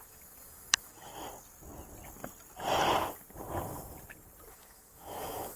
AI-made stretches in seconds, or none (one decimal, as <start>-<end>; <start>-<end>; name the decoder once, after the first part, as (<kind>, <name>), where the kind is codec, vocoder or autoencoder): 0.0-1.1 (autoencoder, DAC-VAE); 4.5-5.6